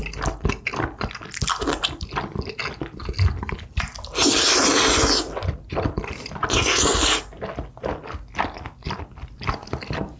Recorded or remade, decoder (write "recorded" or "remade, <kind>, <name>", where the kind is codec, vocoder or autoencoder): recorded